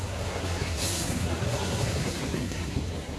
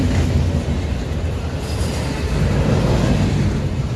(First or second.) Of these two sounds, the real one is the second